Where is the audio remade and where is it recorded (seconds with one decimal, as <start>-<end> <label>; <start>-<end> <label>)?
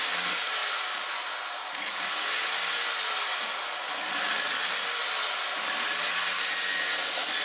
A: 0.0-7.4 recorded